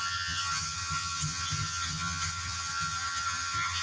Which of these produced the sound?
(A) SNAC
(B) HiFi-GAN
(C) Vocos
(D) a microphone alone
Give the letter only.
B